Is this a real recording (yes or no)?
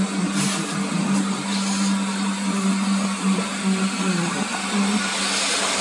yes